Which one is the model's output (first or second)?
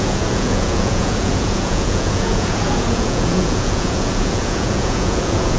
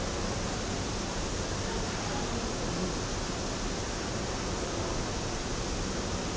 first